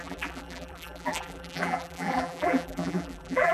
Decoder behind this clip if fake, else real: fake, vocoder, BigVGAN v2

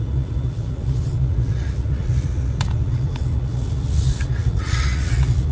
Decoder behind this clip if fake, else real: fake, vocoder, Vocos